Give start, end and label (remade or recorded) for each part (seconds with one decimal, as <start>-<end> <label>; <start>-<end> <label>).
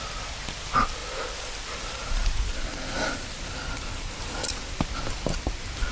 0.0-1.0 recorded; 1.0-4.5 remade; 4.5-5.9 recorded